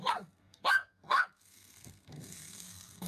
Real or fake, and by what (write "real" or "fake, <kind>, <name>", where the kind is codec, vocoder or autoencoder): fake, codec, SNAC